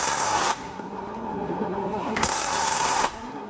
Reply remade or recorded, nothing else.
remade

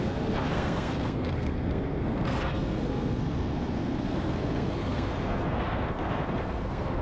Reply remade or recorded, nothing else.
remade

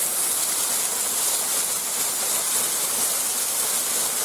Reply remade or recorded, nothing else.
recorded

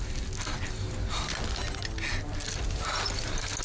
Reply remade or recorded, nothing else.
recorded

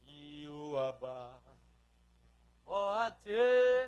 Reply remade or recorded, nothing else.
remade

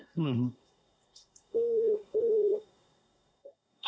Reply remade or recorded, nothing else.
remade